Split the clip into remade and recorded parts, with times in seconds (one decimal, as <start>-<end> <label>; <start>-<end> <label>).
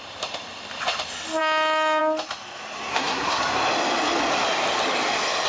0.0-2.9 recorded; 2.9-3.4 remade; 3.4-5.5 recorded